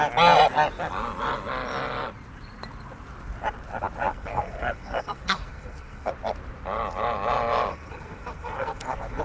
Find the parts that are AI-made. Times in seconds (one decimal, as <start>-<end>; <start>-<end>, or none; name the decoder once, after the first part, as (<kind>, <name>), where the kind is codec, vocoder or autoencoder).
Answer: 4.1-6.1 (codec, SNAC); 7.7-9.2

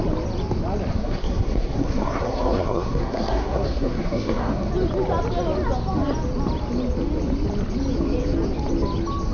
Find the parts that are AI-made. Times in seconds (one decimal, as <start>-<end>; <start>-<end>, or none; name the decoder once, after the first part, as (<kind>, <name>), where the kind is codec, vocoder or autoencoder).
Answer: 0.9-4.7 (codec, SNAC)